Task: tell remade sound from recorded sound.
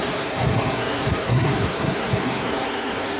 remade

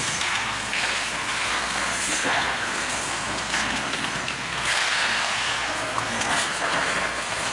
remade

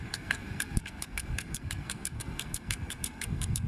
remade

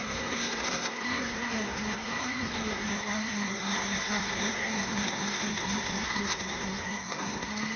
remade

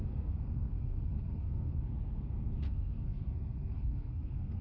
remade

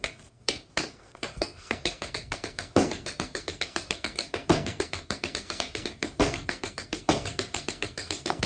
remade